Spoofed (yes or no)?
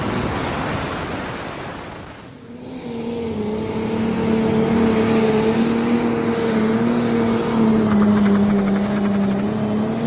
no